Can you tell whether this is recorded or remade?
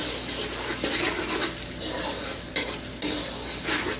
recorded